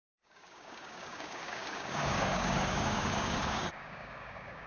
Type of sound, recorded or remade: remade